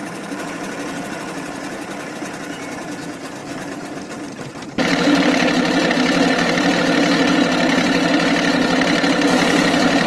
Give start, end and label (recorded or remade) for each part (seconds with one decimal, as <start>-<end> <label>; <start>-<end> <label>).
0.0-2.1 remade; 2.1-3.4 recorded; 3.4-5.9 remade; 5.9-10.1 recorded